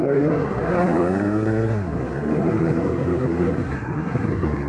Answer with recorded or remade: remade